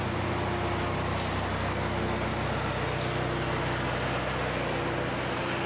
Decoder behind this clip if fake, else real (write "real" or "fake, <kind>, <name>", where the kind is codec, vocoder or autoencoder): real